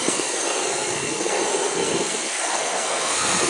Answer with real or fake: fake